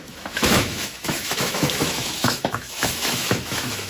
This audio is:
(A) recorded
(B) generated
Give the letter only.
B